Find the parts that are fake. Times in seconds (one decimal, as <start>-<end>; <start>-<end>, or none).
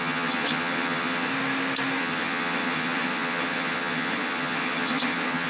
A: 0.0-1.3; 2.0-5.5